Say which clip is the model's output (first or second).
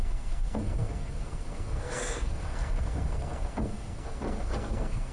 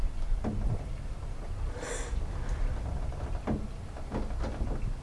first